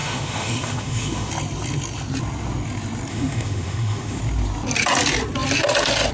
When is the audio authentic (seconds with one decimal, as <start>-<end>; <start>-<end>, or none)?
1.3-3.1; 4.2-6.1